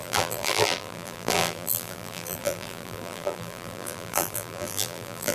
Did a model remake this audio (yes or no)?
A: yes